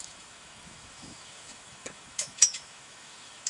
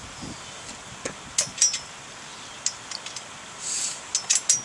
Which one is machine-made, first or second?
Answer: first